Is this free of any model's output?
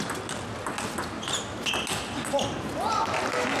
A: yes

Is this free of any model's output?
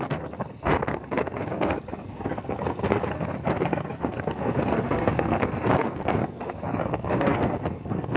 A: no